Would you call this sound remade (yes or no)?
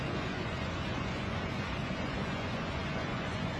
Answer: yes